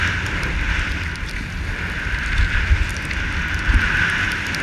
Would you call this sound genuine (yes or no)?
yes